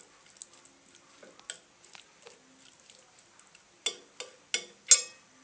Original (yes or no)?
yes